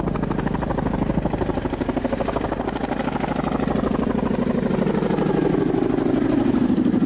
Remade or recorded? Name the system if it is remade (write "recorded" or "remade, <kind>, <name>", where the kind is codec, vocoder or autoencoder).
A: recorded